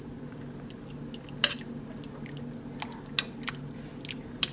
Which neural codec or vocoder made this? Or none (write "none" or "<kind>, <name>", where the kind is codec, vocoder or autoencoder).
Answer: none